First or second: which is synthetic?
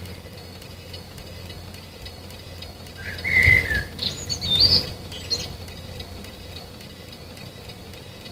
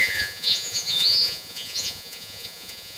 second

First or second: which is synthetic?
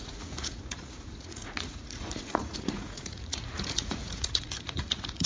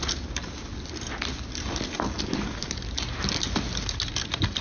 first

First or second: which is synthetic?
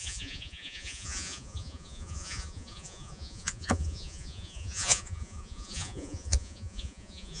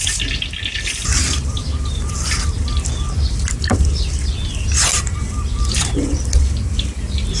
first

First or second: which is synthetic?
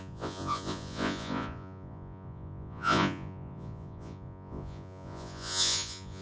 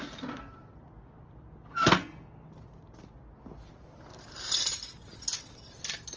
first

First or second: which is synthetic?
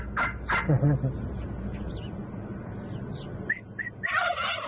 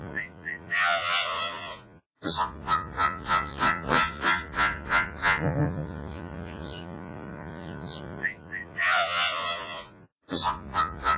second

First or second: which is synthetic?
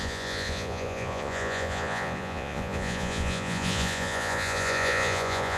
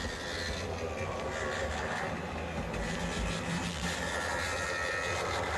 first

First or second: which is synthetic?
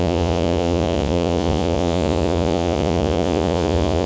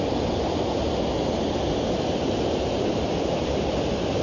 first